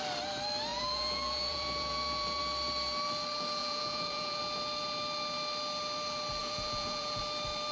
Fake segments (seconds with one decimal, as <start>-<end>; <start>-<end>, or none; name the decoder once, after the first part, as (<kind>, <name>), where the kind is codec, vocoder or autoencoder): 0.7-2.4 (vocoder, Vocos); 3.6-4.4; 6.4-7.2